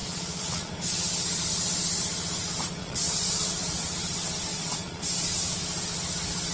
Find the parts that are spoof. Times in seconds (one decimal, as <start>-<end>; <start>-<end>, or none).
0.0-0.7; 2.8-3.8; 4.5-5.0